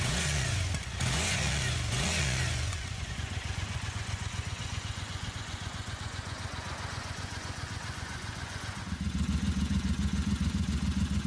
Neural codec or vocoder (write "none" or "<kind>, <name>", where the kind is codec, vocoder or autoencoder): vocoder, Vocos